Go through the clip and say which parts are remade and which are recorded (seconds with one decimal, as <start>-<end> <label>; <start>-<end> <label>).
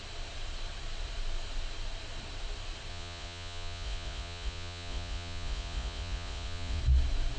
0.0-2.9 recorded; 2.9-6.8 remade; 6.8-7.4 recorded